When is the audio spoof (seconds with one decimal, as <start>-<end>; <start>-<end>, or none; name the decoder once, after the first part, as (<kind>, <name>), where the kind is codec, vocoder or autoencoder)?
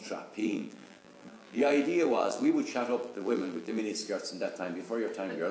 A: 0.4-2.5 (vocoder, BigVGAN v2); 3.0-3.8